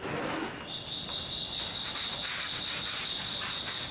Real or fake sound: real